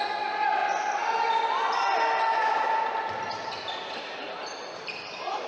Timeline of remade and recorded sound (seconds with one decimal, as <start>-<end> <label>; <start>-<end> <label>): 0.0-5.5 recorded